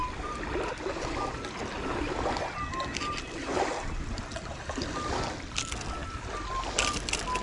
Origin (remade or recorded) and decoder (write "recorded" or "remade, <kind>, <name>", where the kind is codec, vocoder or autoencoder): recorded